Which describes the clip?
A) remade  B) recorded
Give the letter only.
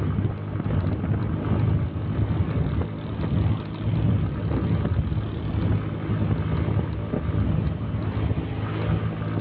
B